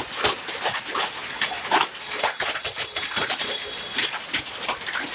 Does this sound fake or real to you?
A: real